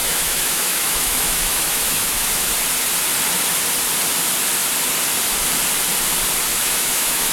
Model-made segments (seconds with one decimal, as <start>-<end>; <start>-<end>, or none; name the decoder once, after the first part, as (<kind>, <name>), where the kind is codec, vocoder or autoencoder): 0.0-2.5 (autoencoder, DAC-VAE); 6.5-7.3